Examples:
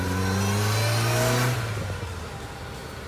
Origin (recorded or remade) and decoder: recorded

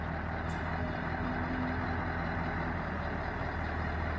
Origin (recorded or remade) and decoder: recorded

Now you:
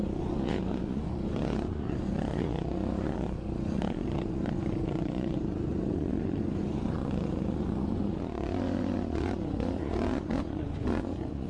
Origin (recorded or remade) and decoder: remade, vocoder, Vocos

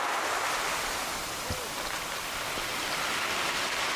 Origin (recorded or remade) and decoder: recorded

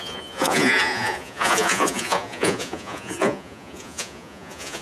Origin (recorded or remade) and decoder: remade, vocoder, Vocos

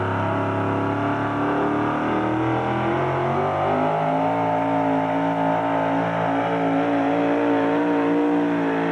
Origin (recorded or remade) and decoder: recorded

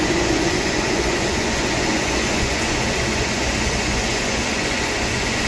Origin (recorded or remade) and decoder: remade, vocoder, Vocos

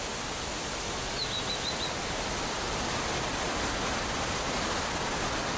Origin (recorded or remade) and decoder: recorded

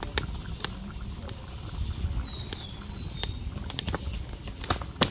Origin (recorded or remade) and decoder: recorded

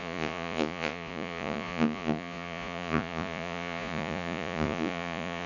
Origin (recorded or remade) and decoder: remade, vocoder, Vocos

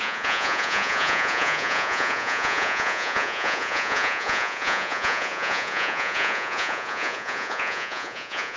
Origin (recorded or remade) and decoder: remade, vocoder, Vocos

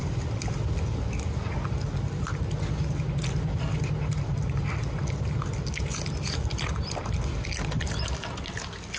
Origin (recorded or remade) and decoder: recorded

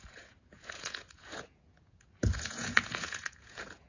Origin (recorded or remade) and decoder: remade, vocoder, Vocos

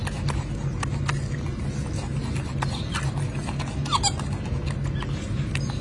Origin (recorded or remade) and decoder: recorded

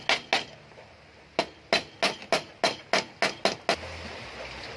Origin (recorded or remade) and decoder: recorded